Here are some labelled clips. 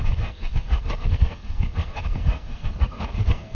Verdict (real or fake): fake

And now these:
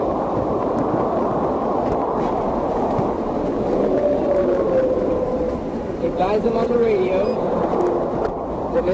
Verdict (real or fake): real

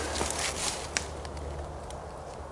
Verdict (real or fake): real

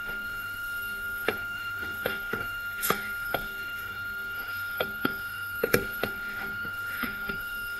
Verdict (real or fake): fake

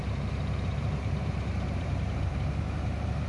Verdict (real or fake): fake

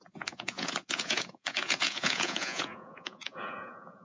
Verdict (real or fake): fake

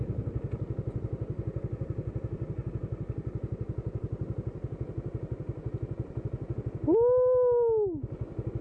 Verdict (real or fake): real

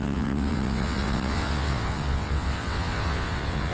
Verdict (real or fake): fake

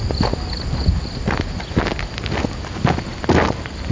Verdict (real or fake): real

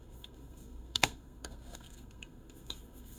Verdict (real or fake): fake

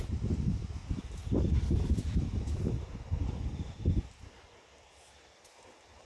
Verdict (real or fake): real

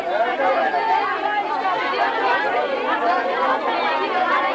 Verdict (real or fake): real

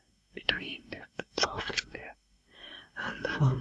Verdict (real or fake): fake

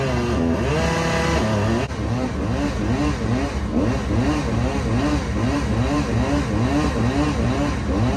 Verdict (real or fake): real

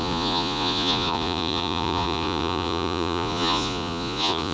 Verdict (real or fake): fake